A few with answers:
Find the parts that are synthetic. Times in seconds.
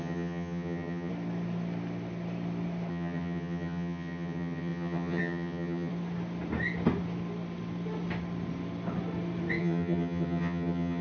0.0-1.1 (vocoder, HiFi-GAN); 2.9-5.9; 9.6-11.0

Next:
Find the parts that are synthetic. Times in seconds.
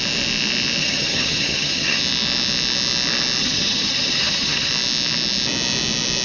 0.8-2.0 (vocoder, HiFi-GAN); 3.4-4.7